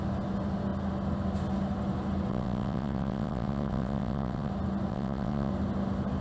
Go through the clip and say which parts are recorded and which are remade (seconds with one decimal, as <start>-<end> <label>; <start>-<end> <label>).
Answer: 0.0-2.3 recorded; 2.3-4.5 remade; 4.5-4.9 recorded; 4.9-5.5 remade; 5.5-6.2 recorded